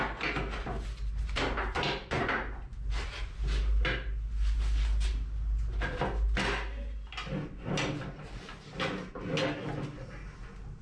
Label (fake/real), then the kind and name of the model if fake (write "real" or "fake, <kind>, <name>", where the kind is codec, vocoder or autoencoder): real